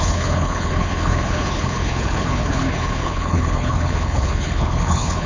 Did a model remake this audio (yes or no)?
yes